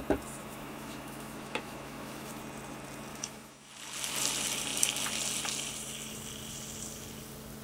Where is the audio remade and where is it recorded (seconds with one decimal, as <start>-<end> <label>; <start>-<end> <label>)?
0.0-0.4 recorded; 0.4-2.4 remade; 2.4-3.1 recorded; 3.1-3.7 remade; 3.7-7.6 recorded